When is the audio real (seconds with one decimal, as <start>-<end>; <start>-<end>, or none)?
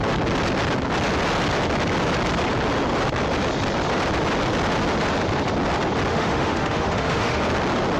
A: 0.0-6.1; 7.4-8.0